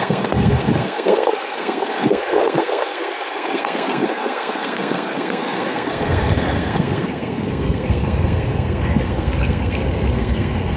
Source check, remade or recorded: remade